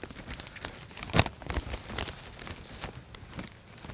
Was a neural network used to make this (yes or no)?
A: no